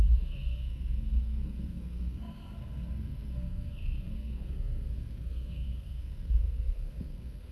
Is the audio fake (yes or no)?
yes